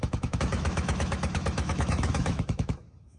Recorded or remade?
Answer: remade